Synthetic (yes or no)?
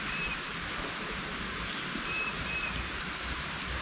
yes